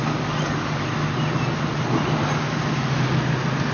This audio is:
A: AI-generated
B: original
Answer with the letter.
B